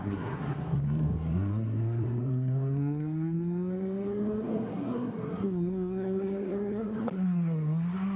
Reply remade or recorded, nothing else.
remade